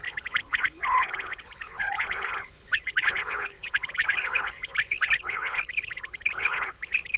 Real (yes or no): no